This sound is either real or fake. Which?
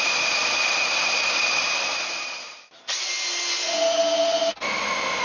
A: real